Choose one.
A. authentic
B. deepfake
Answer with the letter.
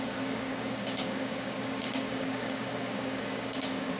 B